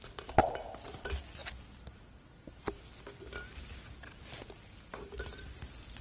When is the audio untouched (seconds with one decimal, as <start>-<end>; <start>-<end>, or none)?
0.0-6.0